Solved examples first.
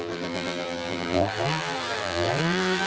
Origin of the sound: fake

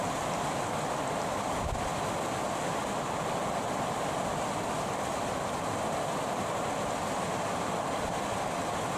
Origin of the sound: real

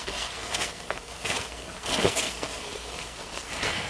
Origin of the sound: fake